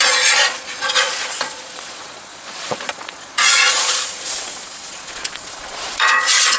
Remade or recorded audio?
remade